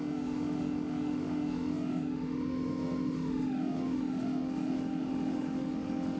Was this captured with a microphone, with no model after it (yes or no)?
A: no